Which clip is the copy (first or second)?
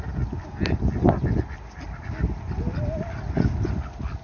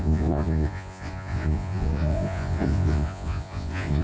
second